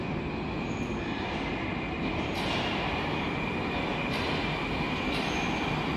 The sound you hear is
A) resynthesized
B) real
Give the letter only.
B